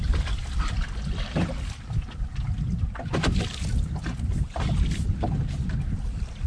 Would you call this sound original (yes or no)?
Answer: yes